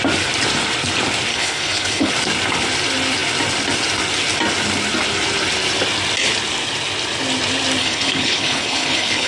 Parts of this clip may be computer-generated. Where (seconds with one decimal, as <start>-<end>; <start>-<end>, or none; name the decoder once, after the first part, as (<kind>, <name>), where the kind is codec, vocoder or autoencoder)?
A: 1.3-2.1 (codec, HILCodec); 7.8-9.3